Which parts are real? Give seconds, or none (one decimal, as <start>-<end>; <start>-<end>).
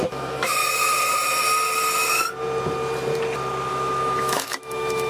0.6-3.7